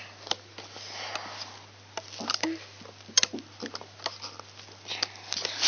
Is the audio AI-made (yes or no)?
no